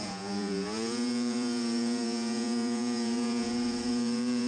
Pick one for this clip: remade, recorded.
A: remade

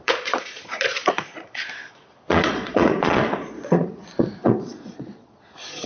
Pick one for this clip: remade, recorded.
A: remade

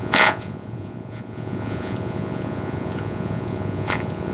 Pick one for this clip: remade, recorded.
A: remade